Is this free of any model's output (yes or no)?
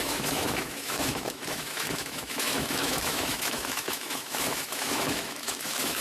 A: no